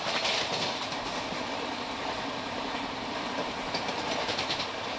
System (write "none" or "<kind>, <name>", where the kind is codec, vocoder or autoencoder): none